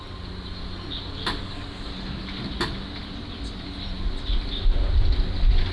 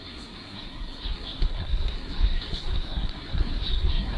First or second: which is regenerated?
second